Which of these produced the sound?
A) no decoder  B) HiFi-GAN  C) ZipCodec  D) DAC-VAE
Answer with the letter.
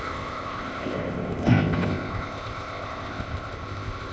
C